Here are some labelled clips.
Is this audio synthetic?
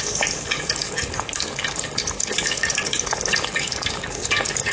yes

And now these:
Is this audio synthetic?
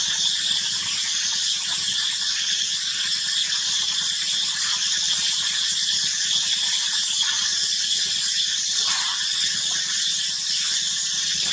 no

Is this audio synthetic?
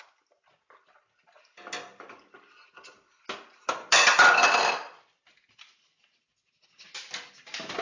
no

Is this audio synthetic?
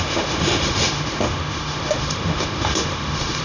yes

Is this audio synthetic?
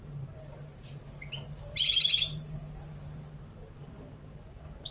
yes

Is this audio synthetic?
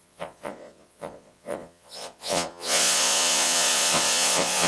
yes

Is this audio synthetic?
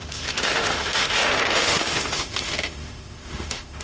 yes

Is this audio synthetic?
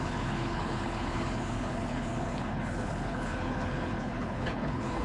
yes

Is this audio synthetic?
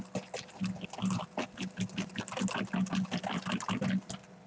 no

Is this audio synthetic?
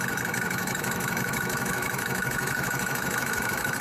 yes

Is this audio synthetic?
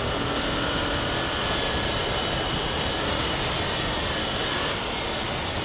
no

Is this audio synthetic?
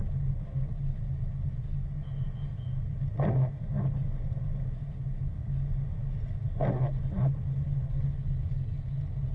no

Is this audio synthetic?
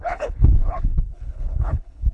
yes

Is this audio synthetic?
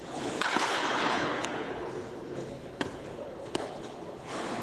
yes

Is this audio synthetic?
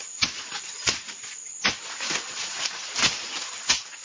no